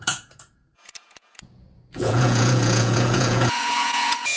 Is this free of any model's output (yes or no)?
no